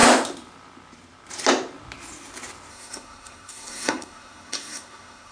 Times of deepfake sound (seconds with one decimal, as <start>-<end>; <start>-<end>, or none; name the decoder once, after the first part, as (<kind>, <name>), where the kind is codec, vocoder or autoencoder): 2.7-5.3 (codec, SNAC)